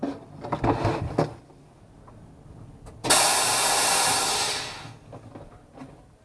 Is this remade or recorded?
recorded